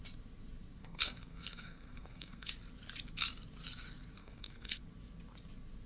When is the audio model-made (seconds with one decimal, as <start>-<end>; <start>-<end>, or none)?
0.8-2.5; 4.2-4.8